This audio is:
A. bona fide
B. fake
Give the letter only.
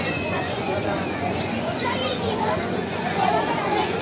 B